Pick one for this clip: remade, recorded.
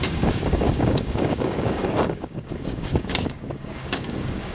remade